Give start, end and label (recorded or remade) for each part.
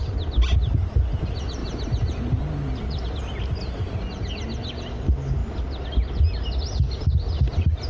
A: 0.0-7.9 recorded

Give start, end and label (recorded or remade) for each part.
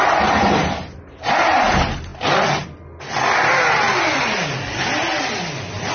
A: 0.0-5.9 recorded